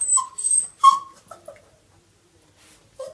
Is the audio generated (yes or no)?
no